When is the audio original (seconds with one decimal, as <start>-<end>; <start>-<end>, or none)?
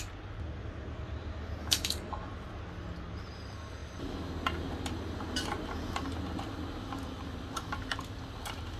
0.0-1.6; 2.3-8.8